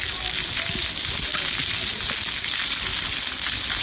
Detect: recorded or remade recorded